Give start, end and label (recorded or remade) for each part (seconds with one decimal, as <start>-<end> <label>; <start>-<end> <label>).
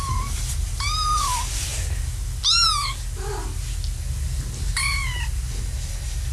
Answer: 0.0-1.7 remade; 1.7-5.5 recorded; 5.5-6.3 remade